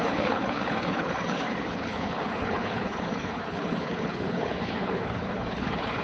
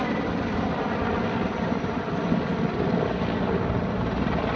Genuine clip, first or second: second